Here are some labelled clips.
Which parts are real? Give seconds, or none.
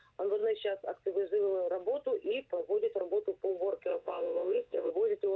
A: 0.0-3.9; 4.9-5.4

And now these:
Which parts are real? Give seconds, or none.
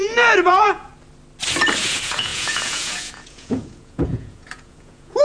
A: 0.9-1.8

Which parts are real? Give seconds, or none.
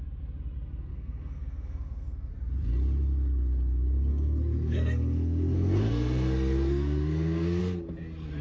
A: 0.0-0.9; 2.3-4.1; 7.6-8.4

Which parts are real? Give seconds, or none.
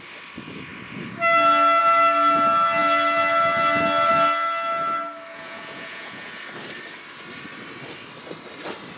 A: 0.0-5.3; 6.4-9.0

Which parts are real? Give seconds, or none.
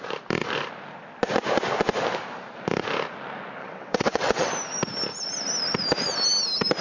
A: 0.0-3.6; 4.5-6.8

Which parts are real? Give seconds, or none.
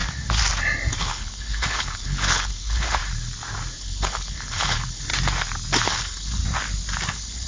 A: 0.0-1.0; 3.0-3.8; 5.1-5.9; 6.4-7.1